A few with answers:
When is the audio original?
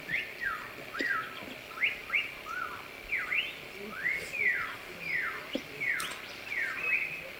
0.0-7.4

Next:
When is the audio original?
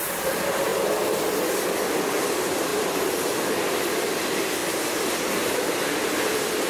0.7-1.9; 2.7-3.5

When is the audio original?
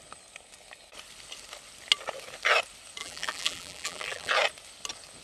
0.0-3.0; 4.3-5.2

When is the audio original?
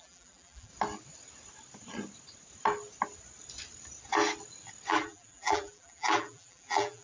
0.7-4.9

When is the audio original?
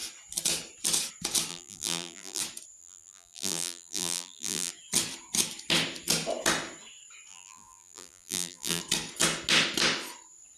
0.0-1.5; 2.4-2.8; 4.7-7.3; 8.8-10.6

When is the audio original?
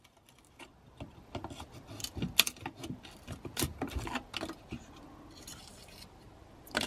0.0-5.4